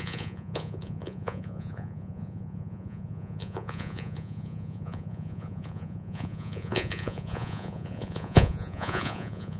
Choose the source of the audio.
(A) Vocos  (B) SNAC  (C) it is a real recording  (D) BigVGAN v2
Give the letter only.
A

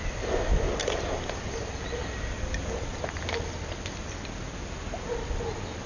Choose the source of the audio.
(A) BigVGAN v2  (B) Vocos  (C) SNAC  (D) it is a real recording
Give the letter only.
D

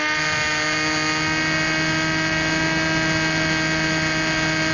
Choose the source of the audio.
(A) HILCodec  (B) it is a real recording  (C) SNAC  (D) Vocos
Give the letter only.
B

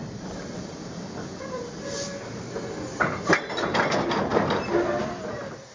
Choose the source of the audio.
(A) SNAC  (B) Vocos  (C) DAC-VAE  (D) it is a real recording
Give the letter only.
D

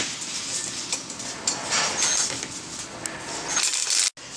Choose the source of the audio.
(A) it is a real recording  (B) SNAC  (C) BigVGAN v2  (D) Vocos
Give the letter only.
A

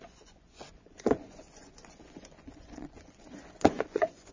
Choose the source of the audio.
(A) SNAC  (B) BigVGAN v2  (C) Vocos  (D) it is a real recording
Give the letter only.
C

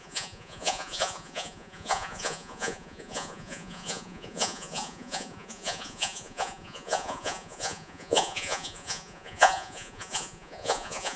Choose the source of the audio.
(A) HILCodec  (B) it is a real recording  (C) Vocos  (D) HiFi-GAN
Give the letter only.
C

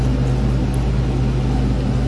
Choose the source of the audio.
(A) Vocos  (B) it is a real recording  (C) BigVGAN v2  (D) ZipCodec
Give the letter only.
B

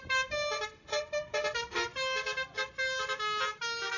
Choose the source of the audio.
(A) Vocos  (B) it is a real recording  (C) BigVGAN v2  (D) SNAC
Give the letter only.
B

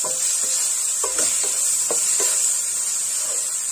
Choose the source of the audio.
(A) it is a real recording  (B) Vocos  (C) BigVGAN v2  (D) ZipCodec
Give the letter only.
A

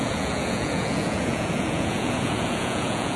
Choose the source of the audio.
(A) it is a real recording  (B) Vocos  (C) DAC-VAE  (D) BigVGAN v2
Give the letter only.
B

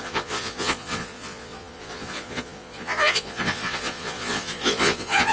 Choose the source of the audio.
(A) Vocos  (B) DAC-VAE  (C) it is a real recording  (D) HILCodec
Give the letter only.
A